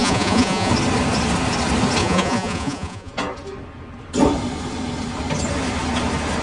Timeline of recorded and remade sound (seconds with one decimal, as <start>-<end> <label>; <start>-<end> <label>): 0.0-0.7 remade; 0.7-2.0 recorded; 2.0-3.1 remade; 3.1-6.4 recorded